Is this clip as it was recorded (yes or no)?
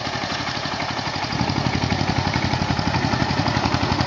no